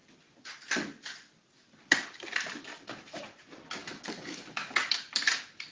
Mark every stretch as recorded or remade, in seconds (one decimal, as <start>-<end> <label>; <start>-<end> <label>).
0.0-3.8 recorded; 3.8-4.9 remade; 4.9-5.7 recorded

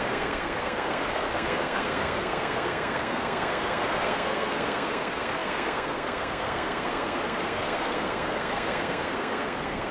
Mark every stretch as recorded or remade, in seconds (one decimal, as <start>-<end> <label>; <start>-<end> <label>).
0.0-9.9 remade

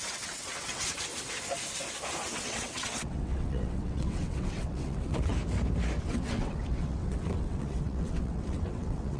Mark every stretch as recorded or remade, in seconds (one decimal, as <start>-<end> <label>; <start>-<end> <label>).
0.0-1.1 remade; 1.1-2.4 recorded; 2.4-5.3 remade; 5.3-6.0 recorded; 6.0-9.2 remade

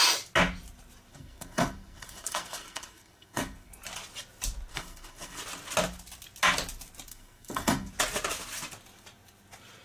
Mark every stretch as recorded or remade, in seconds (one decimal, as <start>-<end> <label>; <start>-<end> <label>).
0.0-1.1 recorded; 1.1-3.7 remade; 3.7-4.7 recorded; 4.7-5.4 remade; 5.4-7.1 recorded; 7.1-7.9 remade; 7.9-9.8 recorded

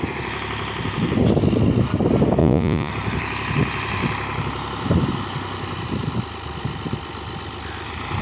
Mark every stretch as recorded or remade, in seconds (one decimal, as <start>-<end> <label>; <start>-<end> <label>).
0.0-2.4 recorded; 2.4-2.9 remade; 2.9-8.2 recorded

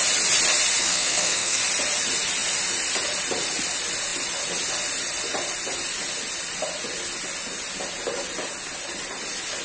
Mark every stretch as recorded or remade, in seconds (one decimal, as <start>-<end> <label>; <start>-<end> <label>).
0.0-0.8 recorded; 0.8-1.6 remade; 1.6-9.6 recorded

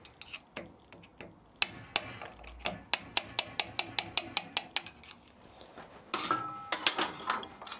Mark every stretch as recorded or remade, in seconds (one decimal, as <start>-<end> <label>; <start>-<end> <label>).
0.0-7.8 recorded